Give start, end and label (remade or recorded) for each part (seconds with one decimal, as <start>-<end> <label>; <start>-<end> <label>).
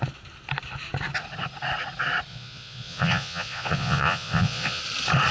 0.0-2.3 recorded; 2.3-4.8 remade; 4.8-5.3 recorded